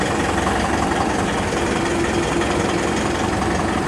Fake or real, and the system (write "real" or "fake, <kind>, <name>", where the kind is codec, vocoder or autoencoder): real